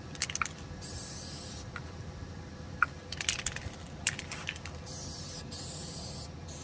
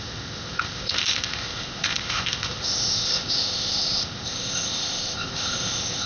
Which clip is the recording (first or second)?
first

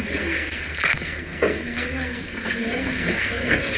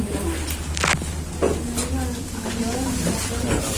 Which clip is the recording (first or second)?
second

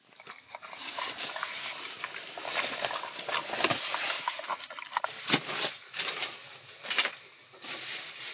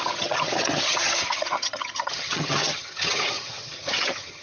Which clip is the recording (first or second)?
first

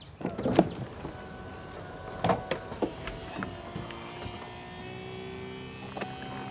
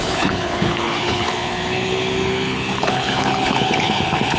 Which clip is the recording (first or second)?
first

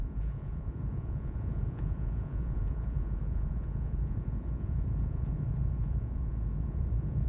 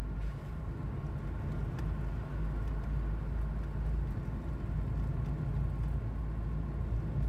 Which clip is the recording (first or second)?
second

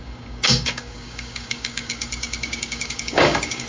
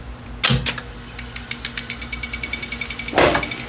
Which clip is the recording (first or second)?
second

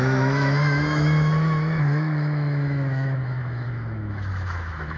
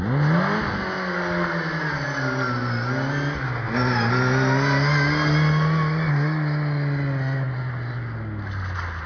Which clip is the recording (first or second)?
second